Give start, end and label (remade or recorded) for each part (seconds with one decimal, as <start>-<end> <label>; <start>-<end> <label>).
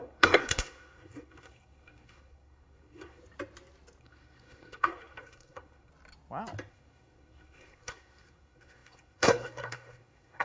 0.0-3.2 remade; 3.2-4.0 recorded; 4.0-5.9 remade; 5.9-6.7 recorded; 6.7-10.4 remade